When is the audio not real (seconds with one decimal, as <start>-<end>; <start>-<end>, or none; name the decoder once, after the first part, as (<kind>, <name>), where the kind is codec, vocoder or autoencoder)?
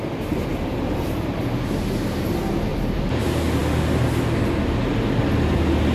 0.5-1.4 (vocoder, BigVGAN v2); 2.7-3.2